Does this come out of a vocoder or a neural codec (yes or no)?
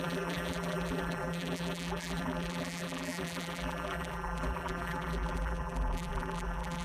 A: yes